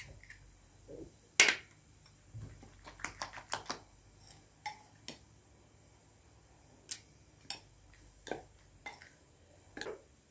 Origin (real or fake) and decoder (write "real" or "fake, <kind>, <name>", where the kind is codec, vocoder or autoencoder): real